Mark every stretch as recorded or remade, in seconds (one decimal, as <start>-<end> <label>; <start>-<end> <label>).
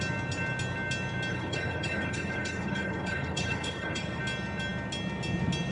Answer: 0.0-1.3 recorded; 1.3-4.2 remade; 4.2-5.7 recorded